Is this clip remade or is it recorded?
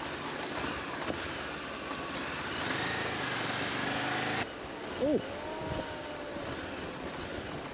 recorded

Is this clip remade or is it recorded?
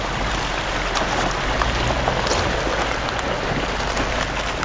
recorded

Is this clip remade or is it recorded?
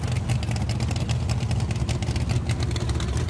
recorded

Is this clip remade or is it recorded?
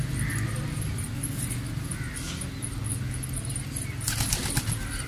recorded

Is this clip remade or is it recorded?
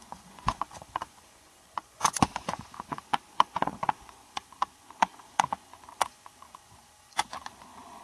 remade